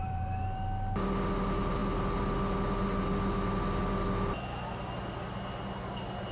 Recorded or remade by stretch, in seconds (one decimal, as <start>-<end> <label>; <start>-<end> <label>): 0.0-6.3 recorded